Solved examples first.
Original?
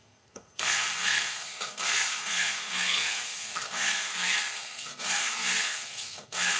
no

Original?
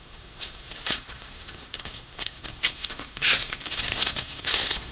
no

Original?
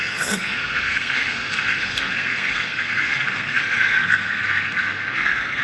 no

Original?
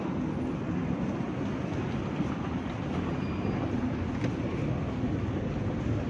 yes